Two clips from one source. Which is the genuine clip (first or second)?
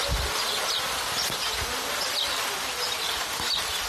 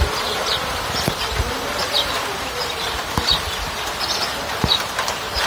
first